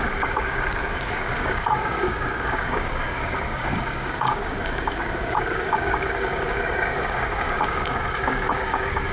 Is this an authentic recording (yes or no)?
no